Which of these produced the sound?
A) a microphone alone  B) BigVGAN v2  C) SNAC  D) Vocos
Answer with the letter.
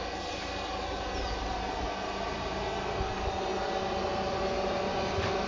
A